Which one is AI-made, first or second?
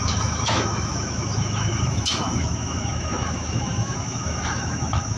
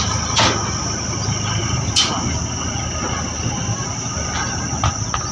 first